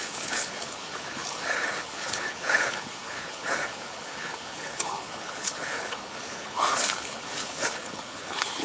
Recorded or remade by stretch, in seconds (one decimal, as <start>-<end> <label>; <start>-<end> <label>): 0.0-8.6 remade